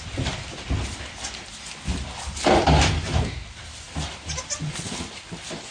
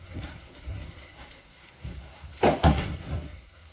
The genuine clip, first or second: first